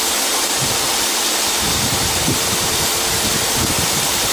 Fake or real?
fake